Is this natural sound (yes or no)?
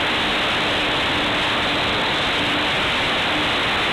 yes